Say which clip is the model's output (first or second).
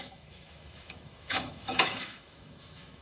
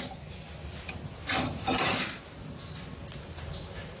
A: first